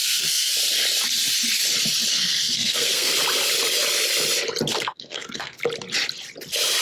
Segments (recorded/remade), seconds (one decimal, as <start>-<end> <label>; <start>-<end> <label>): 0.0-0.5 remade; 0.5-2.1 recorded; 2.1-3.1 remade; 3.1-4.7 recorded; 4.7-5.6 remade; 5.6-6.8 recorded